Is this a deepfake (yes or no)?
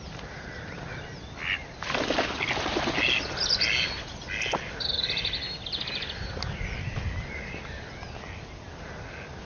no